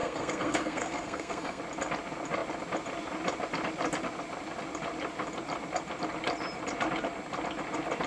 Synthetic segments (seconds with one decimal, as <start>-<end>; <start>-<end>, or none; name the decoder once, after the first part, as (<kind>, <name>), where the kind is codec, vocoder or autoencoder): 0.0-1.6 (codec, SNAC)